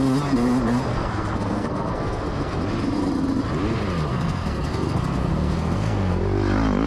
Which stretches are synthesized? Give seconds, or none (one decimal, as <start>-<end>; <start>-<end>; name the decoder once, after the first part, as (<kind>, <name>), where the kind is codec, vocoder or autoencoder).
0.9-2.6 (codec, SNAC); 4.1-6.2